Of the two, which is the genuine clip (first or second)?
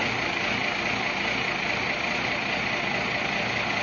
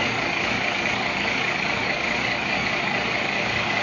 first